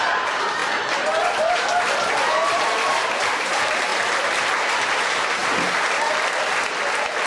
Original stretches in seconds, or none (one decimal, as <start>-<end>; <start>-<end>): 0.6-2.3; 3.9-4.9; 5.4-7.3